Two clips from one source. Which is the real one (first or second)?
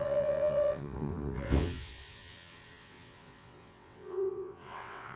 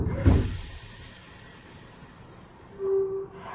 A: second